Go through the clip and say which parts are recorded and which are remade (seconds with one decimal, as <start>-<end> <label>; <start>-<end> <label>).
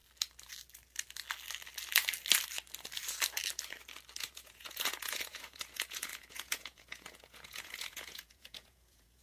0.0-4.2 recorded; 4.2-9.2 remade